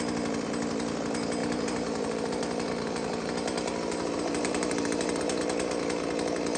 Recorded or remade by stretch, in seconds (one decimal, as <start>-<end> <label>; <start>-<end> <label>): 0.0-1.4 recorded; 1.4-5.4 remade; 5.4-6.6 recorded